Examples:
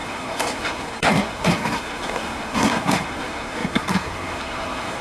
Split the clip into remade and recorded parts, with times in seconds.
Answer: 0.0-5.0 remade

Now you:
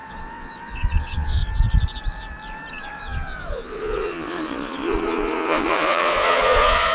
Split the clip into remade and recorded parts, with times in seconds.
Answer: 0.0-1.4 remade; 1.4-2.7 recorded; 2.7-6.9 remade

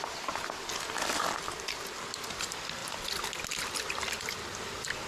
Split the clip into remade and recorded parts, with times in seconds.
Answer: 0.0-5.1 recorded

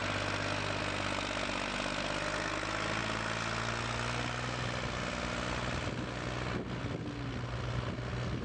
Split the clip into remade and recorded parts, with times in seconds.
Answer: 0.0-8.4 recorded